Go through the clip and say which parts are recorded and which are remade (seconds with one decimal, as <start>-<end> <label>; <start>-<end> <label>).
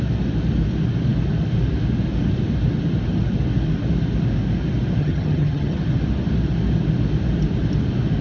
0.0-5.0 recorded; 5.0-5.8 remade; 5.8-8.2 recorded